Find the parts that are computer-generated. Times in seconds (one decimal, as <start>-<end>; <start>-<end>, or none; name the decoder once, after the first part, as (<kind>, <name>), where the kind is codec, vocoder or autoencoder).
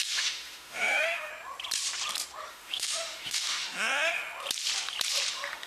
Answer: 0.0-1.3 (autoencoder, DAC-VAE); 2.5-4.2; 5.3-5.7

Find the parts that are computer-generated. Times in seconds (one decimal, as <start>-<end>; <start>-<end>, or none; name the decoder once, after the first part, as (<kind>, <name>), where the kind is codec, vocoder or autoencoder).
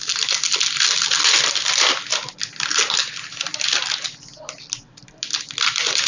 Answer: none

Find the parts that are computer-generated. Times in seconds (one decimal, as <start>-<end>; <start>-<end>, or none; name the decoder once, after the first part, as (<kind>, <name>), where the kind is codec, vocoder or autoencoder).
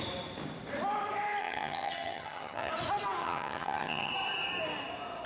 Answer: 1.4-2.7 (vocoder, HiFi-GAN); 3.2-4.1